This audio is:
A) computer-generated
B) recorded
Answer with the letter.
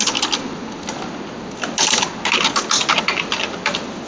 B